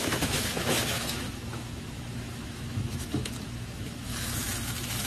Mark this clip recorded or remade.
remade